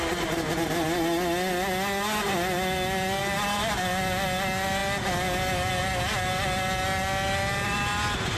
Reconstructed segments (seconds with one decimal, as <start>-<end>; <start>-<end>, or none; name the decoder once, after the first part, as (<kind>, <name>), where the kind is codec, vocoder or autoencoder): none